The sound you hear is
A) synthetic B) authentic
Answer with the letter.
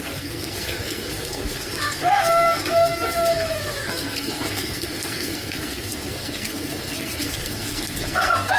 A